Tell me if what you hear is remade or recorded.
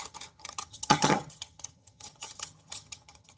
remade